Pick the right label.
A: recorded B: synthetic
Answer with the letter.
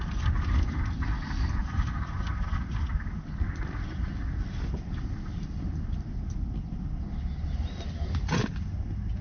A